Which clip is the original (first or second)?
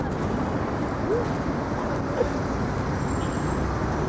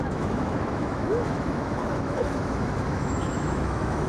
first